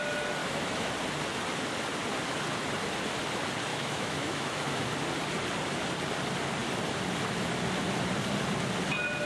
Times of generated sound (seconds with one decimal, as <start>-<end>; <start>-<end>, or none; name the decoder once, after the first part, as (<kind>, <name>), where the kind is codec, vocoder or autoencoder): 0.4-0.9 (autoencoder, DAC-VAE); 3.7-4.8